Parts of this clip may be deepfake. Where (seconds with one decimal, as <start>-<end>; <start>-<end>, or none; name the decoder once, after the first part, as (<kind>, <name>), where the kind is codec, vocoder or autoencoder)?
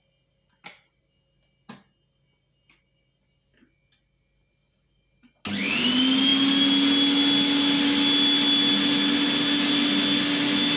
none